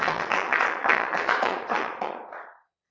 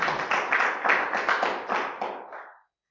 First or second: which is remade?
first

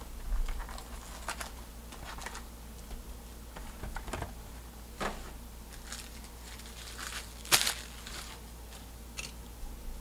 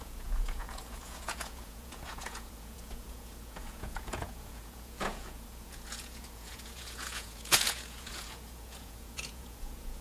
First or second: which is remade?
second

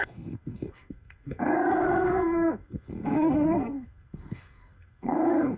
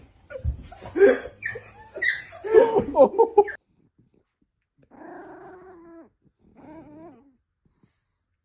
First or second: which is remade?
first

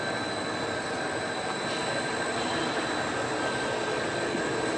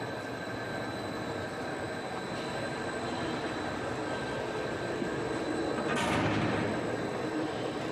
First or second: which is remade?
second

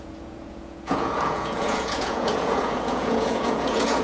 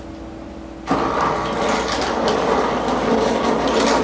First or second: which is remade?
first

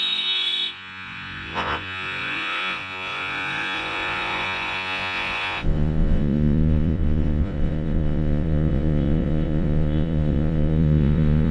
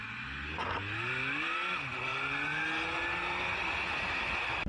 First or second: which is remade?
first